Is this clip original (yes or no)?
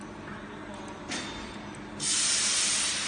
yes